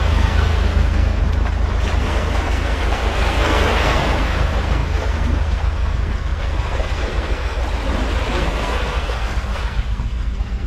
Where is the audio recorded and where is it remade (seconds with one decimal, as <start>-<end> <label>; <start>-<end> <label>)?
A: 0.0-1.2 remade; 1.2-2.0 recorded; 2.0-7.6 remade; 7.6-8.3 recorded; 8.3-10.7 remade